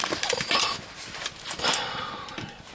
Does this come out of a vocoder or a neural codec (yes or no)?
no